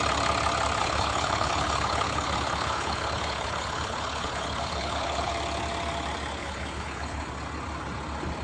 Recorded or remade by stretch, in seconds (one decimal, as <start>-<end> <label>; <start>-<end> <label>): 0.0-0.8 recorded; 0.8-5.3 remade; 5.3-6.4 recorded; 6.4-7.3 remade; 7.3-8.4 recorded